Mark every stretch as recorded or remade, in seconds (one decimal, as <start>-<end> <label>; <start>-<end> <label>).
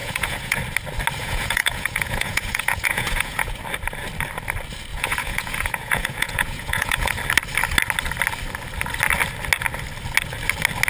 0.0-0.6 remade; 0.6-1.2 recorded; 1.2-3.6 remade; 3.6-4.9 recorded; 4.9-7.1 remade; 7.1-10.9 recorded